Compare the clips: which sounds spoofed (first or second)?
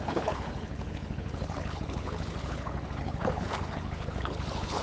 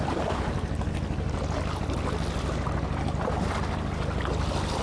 first